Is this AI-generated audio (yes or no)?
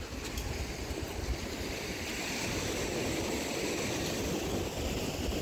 no